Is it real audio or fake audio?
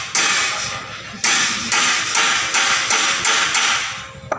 real